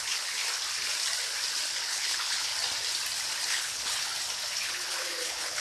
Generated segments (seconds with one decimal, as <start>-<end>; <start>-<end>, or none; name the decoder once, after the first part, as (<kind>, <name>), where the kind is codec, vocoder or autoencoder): 0.0-0.4 (codec, HILCodec); 1.8-2.5; 3.5-4.1; 4.6-5.6